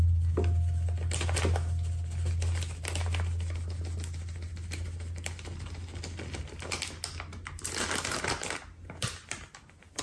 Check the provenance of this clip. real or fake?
real